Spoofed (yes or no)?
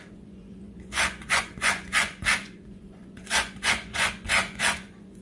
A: yes